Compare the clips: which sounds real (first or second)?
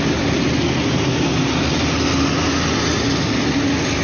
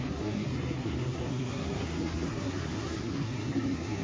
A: first